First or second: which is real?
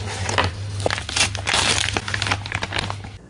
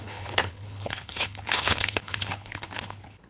first